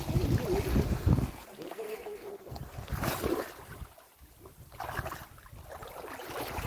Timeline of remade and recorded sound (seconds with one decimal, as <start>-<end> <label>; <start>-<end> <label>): 0.0-0.7 recorded; 0.7-2.9 remade; 2.9-6.7 recorded